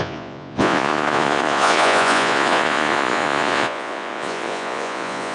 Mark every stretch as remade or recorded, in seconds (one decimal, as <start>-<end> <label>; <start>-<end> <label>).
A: 0.0-5.3 remade